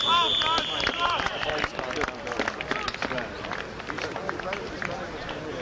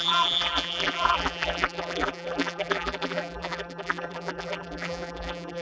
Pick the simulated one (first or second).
second